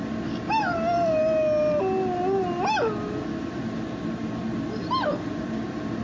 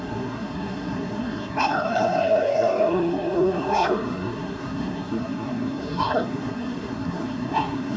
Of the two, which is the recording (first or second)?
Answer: first